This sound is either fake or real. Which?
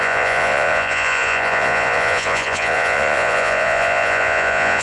fake